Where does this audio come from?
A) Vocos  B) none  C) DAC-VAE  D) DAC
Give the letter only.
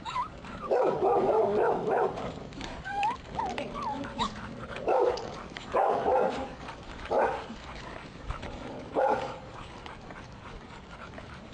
D